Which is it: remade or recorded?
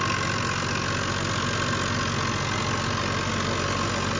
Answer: recorded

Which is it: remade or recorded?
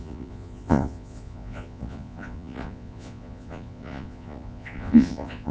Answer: remade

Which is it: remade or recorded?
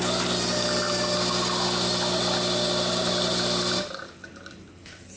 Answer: recorded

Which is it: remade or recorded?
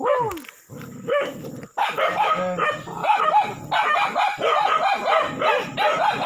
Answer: recorded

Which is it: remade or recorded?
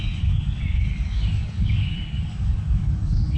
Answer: remade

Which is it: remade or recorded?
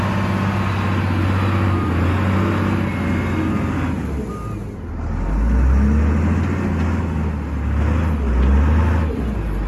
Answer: recorded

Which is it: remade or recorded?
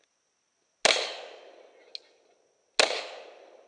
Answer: recorded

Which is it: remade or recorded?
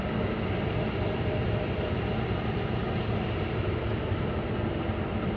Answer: recorded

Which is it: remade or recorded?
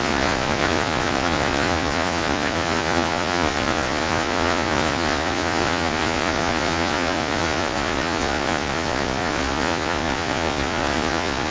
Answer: remade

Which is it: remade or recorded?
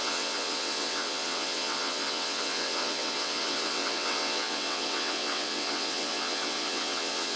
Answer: remade